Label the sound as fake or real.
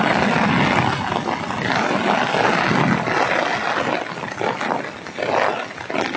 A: real